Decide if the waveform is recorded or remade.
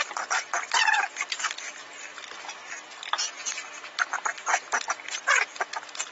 remade